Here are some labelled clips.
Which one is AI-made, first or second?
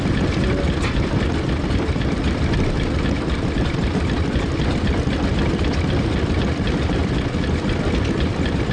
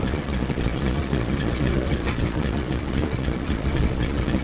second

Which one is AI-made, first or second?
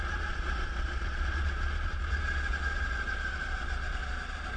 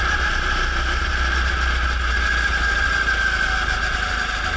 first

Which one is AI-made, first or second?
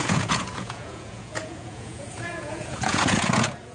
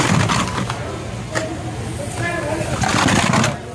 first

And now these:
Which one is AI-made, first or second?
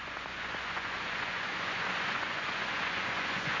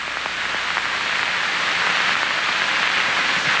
first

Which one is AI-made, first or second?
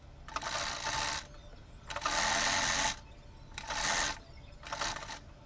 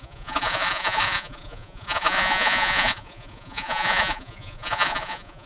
second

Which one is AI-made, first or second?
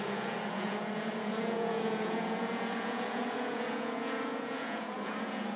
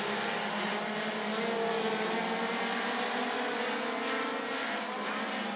first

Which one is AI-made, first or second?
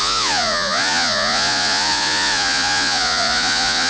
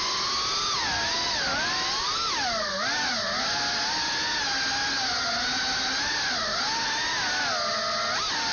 first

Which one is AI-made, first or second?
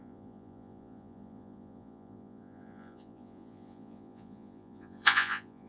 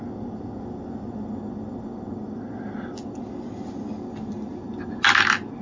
first